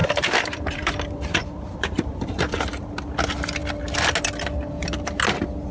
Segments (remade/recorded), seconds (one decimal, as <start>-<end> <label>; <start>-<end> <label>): 0.0-2.9 remade; 2.9-5.7 recorded